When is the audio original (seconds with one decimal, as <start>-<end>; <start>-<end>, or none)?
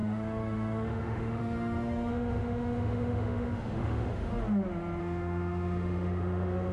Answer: 4.3-5.0